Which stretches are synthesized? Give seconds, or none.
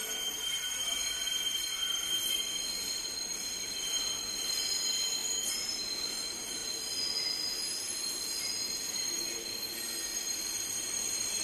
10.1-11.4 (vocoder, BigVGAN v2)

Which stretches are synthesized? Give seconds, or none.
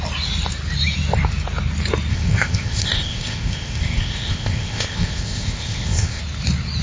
2.1-6.2 (codec, ZipCodec)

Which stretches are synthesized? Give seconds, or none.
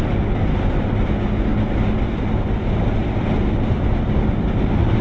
none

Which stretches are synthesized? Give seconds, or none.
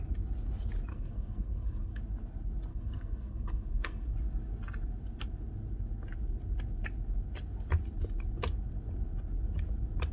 0.9-2.0 (codec, SNAC); 2.7-4.1